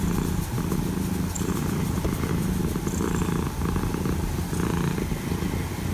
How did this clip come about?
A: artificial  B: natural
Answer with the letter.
B